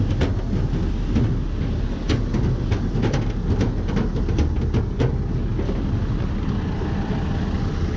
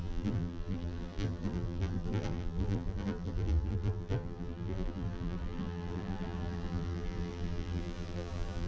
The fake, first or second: second